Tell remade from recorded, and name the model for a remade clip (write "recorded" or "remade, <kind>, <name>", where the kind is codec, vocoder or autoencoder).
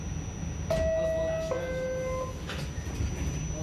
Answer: recorded